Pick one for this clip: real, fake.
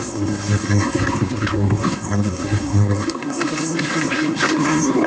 fake